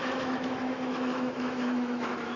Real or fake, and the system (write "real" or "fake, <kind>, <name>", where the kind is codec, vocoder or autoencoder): fake, autoencoder, DAC-VAE